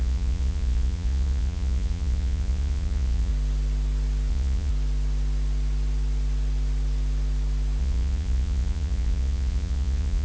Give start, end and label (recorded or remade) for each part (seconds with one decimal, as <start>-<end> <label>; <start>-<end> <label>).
0.0-3.3 remade; 3.3-4.3 recorded; 4.3-4.7 remade; 4.7-7.8 recorded; 7.8-10.2 remade

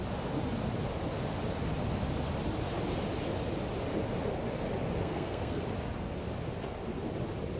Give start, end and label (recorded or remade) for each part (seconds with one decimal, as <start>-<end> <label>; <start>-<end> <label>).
0.0-5.0 recorded; 5.0-5.6 remade; 5.6-7.6 recorded

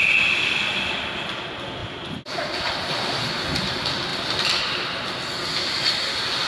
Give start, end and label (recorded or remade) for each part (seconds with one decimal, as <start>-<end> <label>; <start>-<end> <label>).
0.0-6.5 recorded

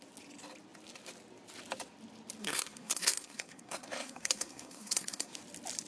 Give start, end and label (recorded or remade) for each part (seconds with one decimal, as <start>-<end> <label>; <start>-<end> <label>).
0.0-2.4 recorded; 2.4-5.4 remade; 5.4-5.9 recorded

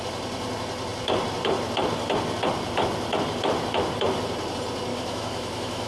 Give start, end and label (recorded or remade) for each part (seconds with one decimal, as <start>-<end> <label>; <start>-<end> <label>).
0.0-4.9 recorded; 4.9-5.9 remade